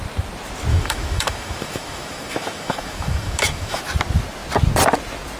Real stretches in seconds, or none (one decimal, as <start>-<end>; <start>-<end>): 0.0-0.7; 3.8-5.4